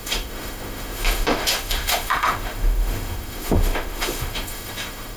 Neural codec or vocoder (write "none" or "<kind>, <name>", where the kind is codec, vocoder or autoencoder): autoencoder, DAC-VAE